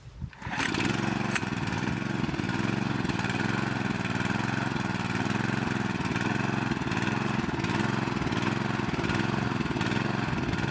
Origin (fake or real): real